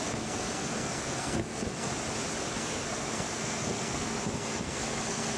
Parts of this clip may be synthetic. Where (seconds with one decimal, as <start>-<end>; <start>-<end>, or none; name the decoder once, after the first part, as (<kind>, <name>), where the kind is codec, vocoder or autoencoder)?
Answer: 0.0-1.9 (codec, SNAC); 2.5-5.4